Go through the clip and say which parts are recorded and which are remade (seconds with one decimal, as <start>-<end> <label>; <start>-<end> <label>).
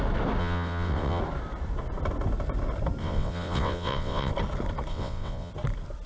0.0-0.4 recorded; 0.4-1.2 remade; 1.2-3.0 recorded; 3.0-4.3 remade; 4.3-4.9 recorded; 4.9-5.5 remade; 5.5-6.1 recorded